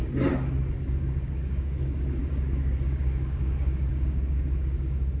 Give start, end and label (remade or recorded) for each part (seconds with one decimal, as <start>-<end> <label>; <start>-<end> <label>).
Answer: 0.0-0.7 recorded; 0.7-5.2 remade